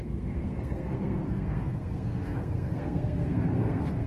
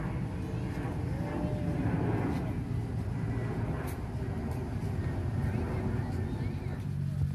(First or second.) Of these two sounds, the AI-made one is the first